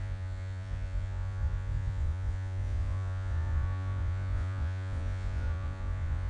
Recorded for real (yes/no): no